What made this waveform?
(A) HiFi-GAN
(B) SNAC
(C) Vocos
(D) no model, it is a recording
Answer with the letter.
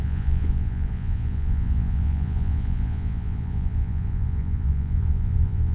C